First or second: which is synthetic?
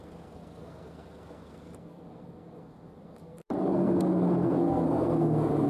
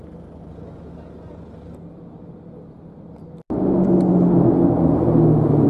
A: first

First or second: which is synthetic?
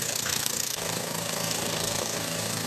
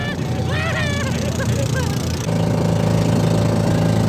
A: first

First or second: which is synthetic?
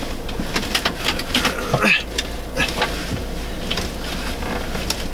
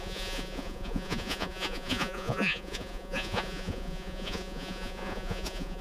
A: second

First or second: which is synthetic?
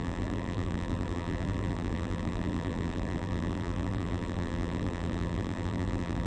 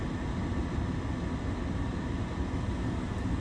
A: first